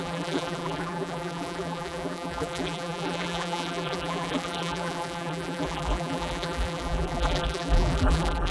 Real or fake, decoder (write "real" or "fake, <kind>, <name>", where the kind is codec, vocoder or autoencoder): fake, vocoder, BigVGAN v2